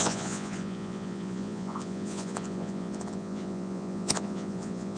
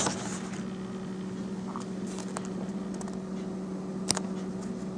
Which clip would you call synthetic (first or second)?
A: first